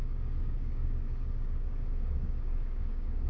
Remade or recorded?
remade